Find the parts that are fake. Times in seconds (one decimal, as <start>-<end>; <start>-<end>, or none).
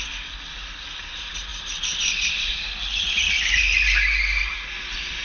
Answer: none